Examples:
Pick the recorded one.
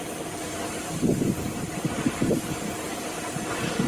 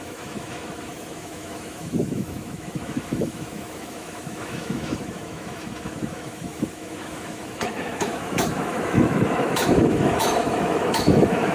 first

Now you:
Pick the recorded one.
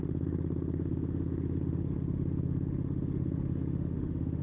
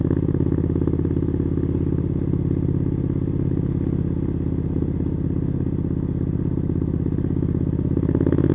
second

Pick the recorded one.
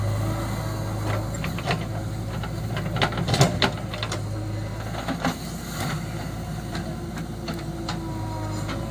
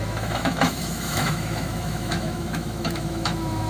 first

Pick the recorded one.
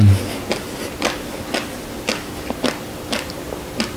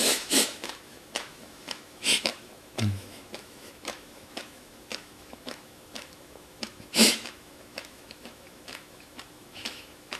first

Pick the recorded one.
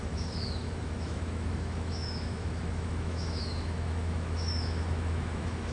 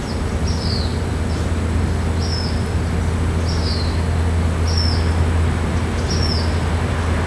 second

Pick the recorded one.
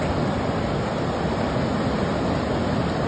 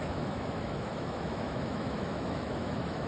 first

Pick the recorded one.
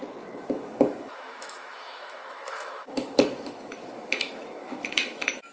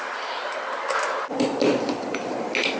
second